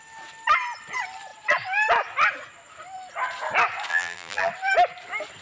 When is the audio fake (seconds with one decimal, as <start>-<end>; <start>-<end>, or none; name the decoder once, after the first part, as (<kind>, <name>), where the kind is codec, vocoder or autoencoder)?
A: 3.9-4.5 (vocoder, BigVGAN v2)